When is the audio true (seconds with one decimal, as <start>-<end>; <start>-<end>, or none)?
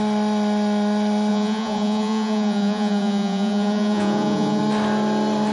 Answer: 0.0-1.3; 4.6-5.5